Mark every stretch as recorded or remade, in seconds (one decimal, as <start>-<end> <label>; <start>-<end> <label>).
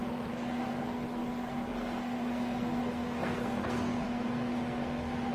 0.0-5.3 remade